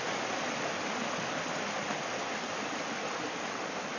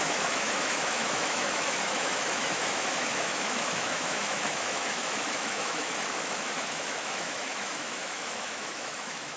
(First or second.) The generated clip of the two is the second